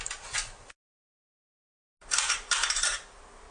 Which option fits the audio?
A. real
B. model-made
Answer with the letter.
A